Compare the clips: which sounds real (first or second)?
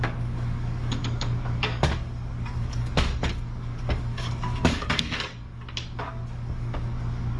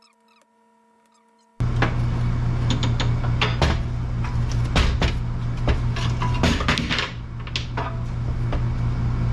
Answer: second